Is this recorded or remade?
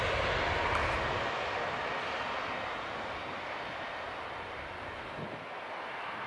recorded